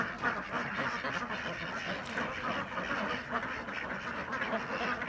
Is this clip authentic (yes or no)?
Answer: yes